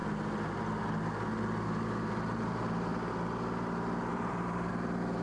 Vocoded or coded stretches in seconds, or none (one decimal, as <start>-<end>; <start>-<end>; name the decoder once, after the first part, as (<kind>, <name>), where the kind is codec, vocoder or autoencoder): 4.1-4.7 (vocoder, BigVGAN v2)